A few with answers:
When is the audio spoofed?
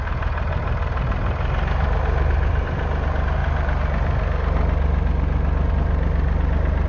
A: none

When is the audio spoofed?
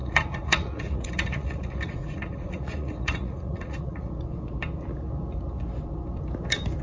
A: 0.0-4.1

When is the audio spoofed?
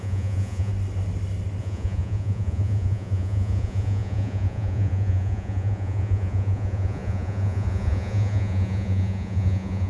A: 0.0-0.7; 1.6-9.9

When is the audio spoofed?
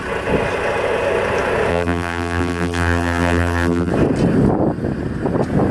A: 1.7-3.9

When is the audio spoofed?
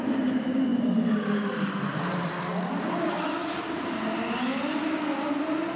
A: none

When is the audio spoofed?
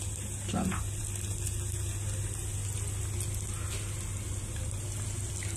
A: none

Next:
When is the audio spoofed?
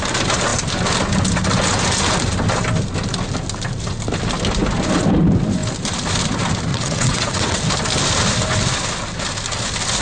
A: 6.7-7.6